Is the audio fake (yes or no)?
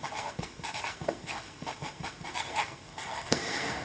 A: yes